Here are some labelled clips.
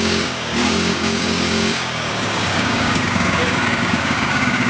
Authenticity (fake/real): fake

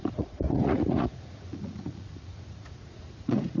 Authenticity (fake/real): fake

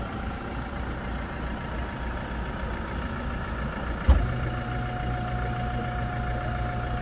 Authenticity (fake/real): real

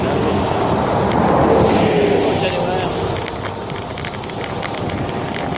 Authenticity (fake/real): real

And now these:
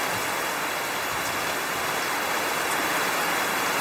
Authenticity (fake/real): real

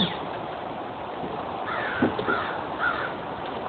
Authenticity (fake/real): real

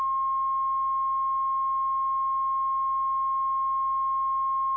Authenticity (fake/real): real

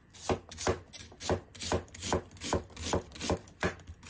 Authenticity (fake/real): real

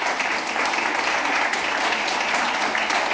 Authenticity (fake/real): real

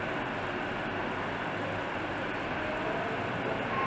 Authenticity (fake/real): real